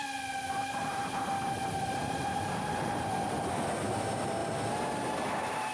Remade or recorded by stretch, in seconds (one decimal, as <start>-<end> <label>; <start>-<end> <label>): 0.0-0.6 recorded; 0.6-1.2 remade; 1.2-1.6 recorded; 1.6-2.7 remade; 2.7-4.4 recorded; 4.4-5.7 remade